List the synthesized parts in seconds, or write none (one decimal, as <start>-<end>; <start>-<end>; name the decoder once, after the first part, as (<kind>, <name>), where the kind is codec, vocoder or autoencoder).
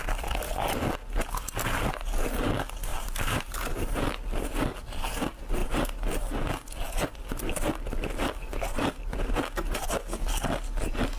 2.9-4.0 (vocoder, BigVGAN v2)